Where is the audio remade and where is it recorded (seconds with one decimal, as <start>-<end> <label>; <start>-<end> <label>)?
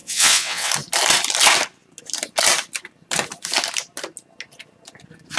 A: 0.0-0.7 remade; 0.7-5.4 recorded